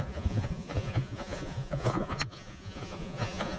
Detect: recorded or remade remade